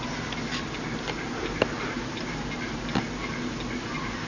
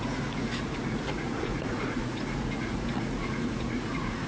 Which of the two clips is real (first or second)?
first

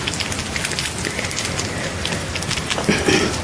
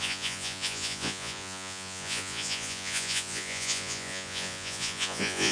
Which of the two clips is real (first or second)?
first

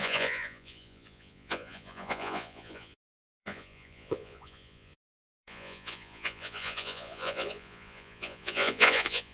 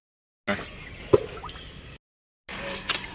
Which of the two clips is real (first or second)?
second